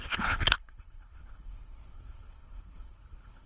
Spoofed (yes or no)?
yes